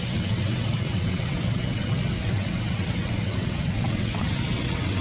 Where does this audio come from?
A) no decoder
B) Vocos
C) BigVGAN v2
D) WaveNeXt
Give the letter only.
D